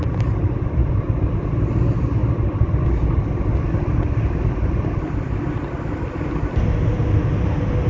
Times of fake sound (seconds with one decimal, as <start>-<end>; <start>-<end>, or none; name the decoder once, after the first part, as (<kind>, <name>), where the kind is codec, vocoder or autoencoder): none